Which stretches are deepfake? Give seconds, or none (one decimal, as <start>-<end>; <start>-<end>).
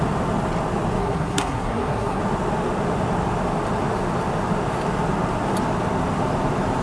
1.0-2.2